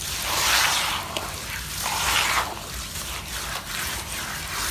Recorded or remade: recorded